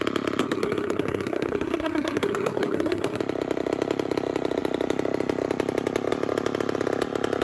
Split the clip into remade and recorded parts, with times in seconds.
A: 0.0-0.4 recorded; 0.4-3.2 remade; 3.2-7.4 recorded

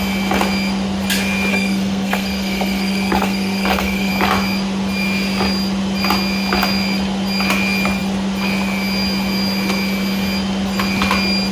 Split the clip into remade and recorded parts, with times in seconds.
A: 0.0-1.5 recorded; 1.5-4.1 remade; 4.1-11.5 recorded

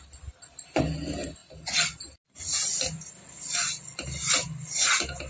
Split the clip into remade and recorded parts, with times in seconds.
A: 0.0-5.3 recorded

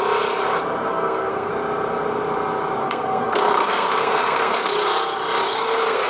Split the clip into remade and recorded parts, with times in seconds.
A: 0.0-0.9 recorded; 0.9-1.5 remade; 1.5-2.8 recorded; 2.8-4.7 remade; 4.7-5.4 recorded; 5.4-6.1 remade

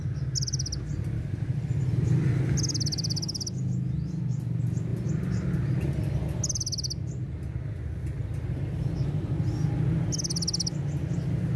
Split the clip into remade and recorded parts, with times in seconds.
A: 0.0-11.6 recorded

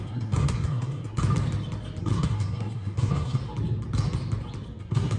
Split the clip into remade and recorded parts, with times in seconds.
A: 0.0-1.2 remade; 1.2-2.0 recorded; 2.0-3.4 remade; 3.4-4.8 recorded; 4.8-5.2 remade

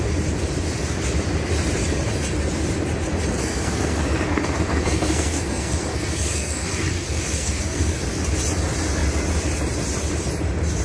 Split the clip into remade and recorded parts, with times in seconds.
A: 0.0-3.4 recorded; 3.4-8.0 remade; 8.0-10.8 recorded

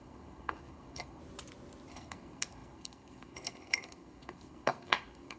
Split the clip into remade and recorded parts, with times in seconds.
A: 0.0-1.2 remade; 1.2-1.9 recorded; 1.9-5.4 remade